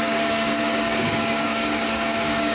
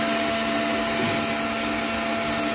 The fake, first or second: first